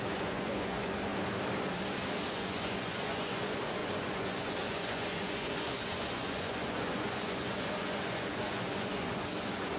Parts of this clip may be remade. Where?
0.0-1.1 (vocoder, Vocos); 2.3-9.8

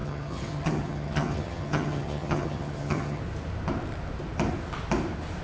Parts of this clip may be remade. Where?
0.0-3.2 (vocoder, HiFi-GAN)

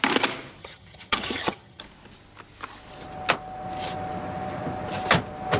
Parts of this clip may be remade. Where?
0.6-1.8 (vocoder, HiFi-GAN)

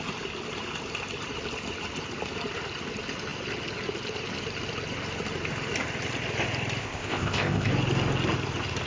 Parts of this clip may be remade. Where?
6.8-7.7 (codec, ZipCodec)